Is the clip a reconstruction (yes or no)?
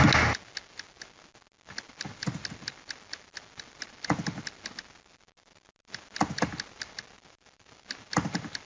no